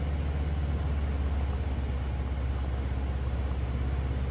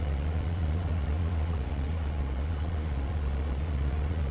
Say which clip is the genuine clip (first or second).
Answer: first